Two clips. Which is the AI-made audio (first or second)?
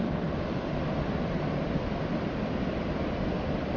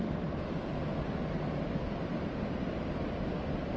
first